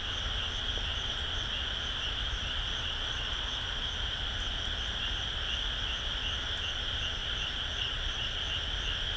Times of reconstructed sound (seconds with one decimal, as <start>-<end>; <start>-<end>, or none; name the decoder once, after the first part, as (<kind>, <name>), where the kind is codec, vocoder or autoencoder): 2.4-3.3 (vocoder, Vocos); 7.2-8.4